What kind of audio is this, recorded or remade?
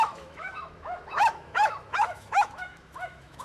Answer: remade